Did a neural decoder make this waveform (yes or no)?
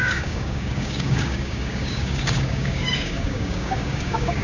yes